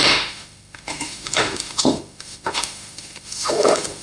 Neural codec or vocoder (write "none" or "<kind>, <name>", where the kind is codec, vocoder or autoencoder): autoencoder, DAC-VAE